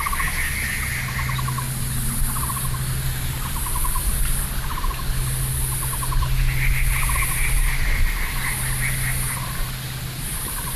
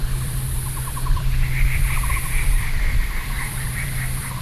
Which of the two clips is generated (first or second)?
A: second